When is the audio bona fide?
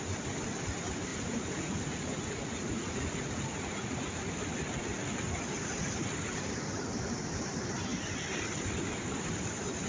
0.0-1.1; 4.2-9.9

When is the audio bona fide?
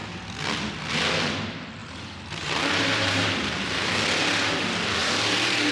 0.0-1.8; 4.0-5.0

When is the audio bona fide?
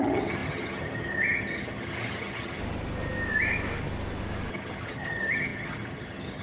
2.6-4.5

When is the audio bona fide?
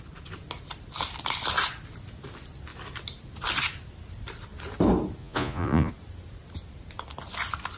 0.0-5.2; 5.9-7.8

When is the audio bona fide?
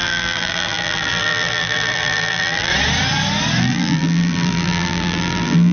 2.7-3.6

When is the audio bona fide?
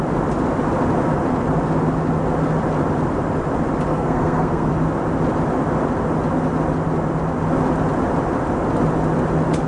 0.0-3.9; 4.7-9.7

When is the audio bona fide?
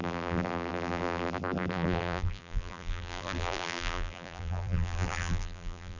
none